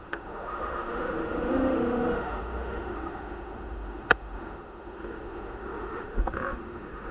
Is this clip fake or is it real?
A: fake